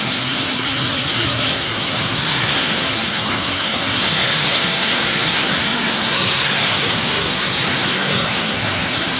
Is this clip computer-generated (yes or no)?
yes